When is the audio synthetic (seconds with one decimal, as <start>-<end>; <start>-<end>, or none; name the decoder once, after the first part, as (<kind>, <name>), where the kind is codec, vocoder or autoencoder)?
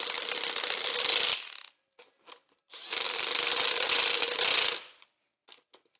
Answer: none